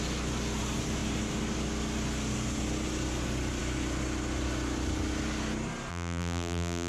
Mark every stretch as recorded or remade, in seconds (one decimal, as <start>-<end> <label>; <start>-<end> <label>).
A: 0.0-5.9 recorded; 5.9-6.9 remade

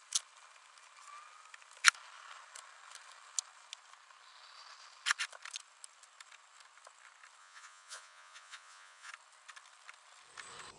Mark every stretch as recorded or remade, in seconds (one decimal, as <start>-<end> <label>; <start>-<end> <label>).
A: 0.0-7.4 recorded; 7.4-9.1 remade; 9.1-10.8 recorded

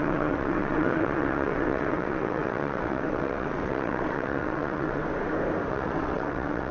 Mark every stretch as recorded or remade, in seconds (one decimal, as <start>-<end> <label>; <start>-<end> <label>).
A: 0.0-5.0 remade; 5.0-5.7 recorded; 5.7-6.7 remade